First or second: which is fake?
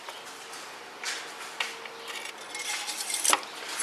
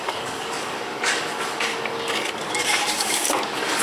second